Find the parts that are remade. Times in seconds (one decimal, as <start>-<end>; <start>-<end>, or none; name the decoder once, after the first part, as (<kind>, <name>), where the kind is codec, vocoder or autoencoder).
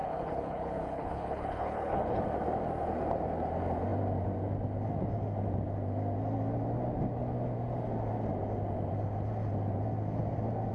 0.0-2.2 (codec, HILCodec)